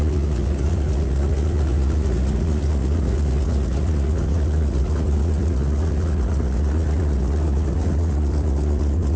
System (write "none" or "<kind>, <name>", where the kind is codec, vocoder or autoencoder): vocoder, Vocos